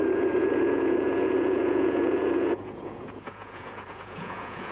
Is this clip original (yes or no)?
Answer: no